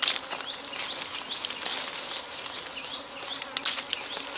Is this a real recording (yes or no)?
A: yes